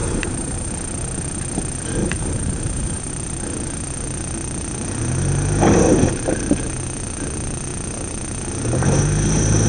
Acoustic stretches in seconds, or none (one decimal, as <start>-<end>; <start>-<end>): 0.7-2.0; 3.1-9.7